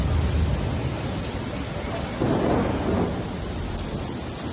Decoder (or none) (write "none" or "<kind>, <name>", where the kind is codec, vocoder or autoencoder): none